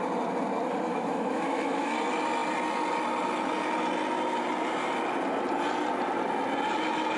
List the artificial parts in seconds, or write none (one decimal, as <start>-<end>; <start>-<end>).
0.9-1.9